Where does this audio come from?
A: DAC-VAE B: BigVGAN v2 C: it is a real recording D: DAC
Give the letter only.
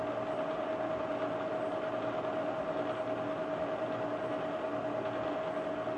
C